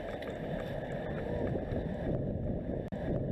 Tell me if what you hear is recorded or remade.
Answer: recorded